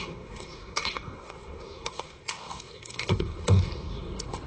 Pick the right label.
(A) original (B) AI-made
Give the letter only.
B